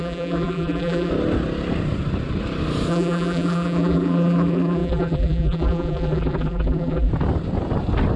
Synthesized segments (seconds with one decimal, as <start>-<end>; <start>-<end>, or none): 0.0-1.1; 2.9-7.1